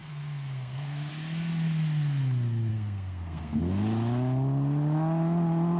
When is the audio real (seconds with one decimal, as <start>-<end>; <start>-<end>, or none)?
1.1-2.7; 3.6-5.8

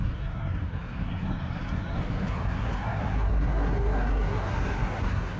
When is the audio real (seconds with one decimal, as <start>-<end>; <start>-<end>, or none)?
none

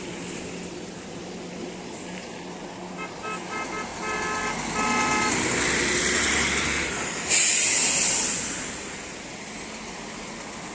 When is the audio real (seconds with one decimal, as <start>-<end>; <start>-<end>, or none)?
0.0-10.7

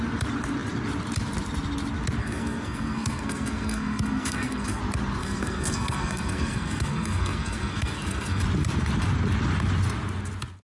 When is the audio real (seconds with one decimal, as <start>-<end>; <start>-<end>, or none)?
0.0-2.2; 4.8-5.2; 8.4-10.8

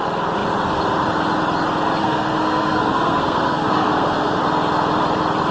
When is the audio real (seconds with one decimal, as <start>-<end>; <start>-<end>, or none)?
0.0-2.0; 4.4-5.5

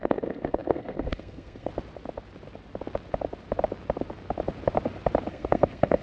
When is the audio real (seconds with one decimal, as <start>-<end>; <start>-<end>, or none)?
1.7-5.3

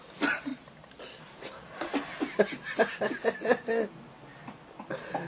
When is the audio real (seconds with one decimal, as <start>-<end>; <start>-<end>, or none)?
0.0-5.3